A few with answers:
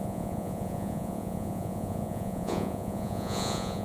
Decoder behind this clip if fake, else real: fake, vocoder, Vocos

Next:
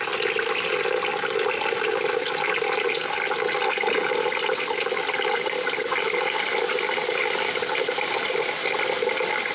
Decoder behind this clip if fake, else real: real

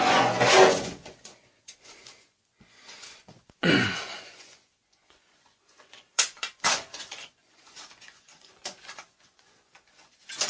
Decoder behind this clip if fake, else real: fake, vocoder, Vocos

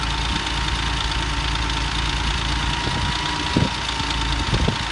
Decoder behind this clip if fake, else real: real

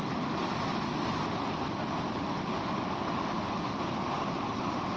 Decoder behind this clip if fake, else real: real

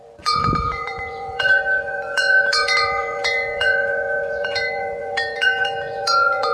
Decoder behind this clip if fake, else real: fake, vocoder, Vocos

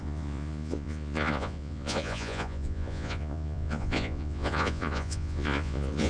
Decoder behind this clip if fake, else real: fake, vocoder, Vocos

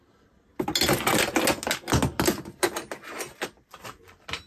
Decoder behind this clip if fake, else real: real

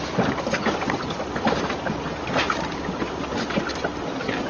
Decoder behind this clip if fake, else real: real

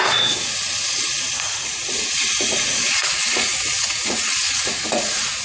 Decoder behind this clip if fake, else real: fake, vocoder, Vocos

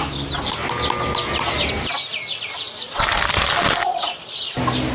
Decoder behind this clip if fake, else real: real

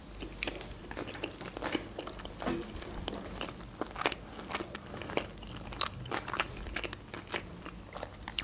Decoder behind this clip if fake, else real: real